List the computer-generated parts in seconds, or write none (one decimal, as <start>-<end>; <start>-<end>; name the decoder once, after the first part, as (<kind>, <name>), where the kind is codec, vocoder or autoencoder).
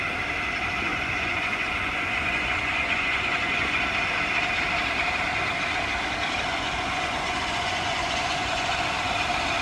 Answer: 0.9-3.8 (vocoder, Vocos); 6.5-8.8